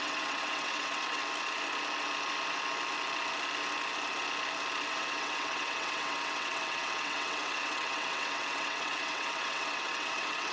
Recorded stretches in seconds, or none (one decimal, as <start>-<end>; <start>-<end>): 1.2-4.9